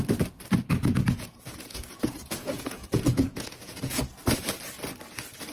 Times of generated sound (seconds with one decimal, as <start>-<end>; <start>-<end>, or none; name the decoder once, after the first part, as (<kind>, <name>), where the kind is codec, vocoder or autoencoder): 0.8-4.0 (vocoder, Vocos)